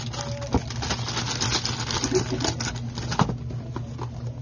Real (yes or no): yes